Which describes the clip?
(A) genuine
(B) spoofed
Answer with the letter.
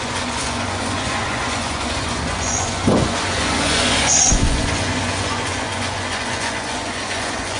B